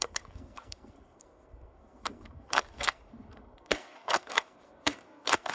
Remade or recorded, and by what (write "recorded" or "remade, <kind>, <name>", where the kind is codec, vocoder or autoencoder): remade, codec, SNAC